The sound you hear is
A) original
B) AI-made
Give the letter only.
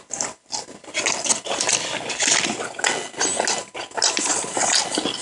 A